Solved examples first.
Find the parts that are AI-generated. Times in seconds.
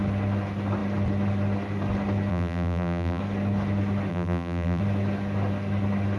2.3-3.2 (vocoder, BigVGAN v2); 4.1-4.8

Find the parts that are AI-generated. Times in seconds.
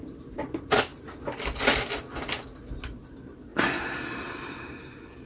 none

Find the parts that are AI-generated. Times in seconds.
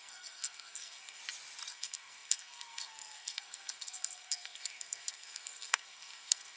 0.0-1.2 (codec, SNAC); 1.7-6.6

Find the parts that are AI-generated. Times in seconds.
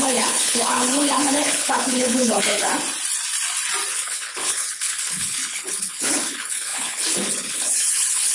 0.0-2.7 (codec, HILCodec); 3.9-8.3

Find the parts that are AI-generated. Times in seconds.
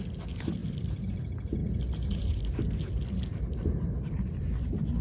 none